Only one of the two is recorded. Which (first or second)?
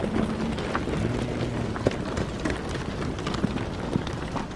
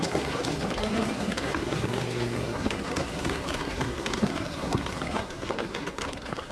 first